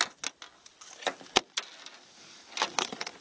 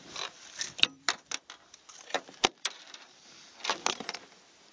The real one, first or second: first